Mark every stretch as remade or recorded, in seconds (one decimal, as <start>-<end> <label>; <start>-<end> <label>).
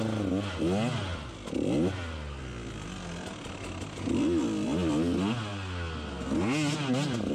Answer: 0.0-1.1 recorded; 1.1-2.4 remade; 2.4-7.3 recorded